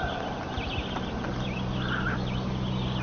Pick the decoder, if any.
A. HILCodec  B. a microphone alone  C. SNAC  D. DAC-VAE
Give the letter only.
B